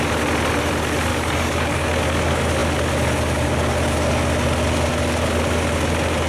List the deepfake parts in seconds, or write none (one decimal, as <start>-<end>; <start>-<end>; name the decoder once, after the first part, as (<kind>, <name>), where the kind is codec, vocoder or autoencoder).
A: 1.1-1.9 (codec, DAC)